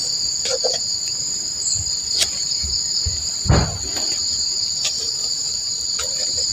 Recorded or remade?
recorded